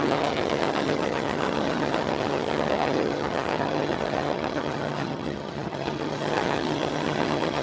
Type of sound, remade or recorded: remade